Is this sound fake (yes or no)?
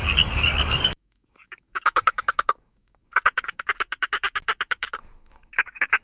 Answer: yes